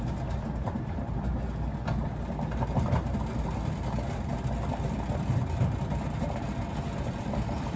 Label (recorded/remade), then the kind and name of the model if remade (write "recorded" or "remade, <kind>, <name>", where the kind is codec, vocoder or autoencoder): recorded